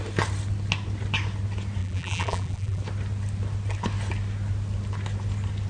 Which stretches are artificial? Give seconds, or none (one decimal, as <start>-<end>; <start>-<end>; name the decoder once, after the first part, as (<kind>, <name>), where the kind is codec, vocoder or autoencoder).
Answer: 1.8-2.8 (vocoder, BigVGAN v2)